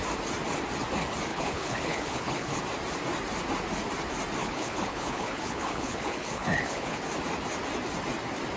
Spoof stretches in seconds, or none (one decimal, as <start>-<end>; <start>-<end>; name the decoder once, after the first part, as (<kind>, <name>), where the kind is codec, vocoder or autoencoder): 1.3-2.6 (codec, HILCodec); 4.4-7.0